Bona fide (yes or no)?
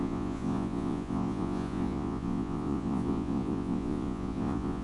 no